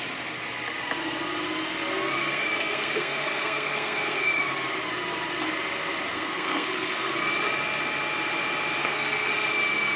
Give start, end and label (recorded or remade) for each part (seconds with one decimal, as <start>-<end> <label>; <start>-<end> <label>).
0.0-2.2 recorded; 2.2-4.4 remade; 4.4-6.1 recorded; 6.1-7.1 remade; 7.1-8.8 recorded; 8.8-9.3 remade; 9.3-10.0 recorded